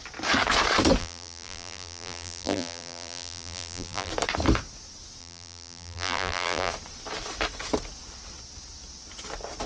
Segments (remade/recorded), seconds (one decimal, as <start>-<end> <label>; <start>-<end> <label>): 0.0-1.0 recorded; 1.0-4.1 remade; 4.1-5.2 recorded; 5.2-6.7 remade; 6.7-9.7 recorded